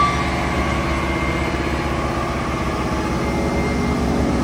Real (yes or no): yes